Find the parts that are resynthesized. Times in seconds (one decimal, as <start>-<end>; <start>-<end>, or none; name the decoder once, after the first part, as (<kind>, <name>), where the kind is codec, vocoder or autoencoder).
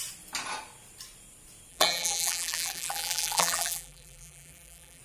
1.7-5.0 (vocoder, BigVGAN v2)